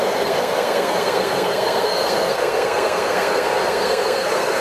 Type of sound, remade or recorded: remade